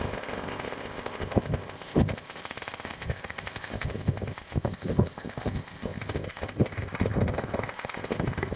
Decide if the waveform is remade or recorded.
remade